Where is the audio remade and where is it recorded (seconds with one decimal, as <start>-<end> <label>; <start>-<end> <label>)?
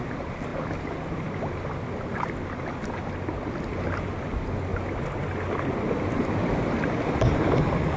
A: 0.0-4.7 recorded; 4.7-6.1 remade; 6.1-8.0 recorded